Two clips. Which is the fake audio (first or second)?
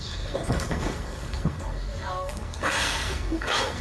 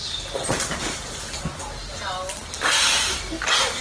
first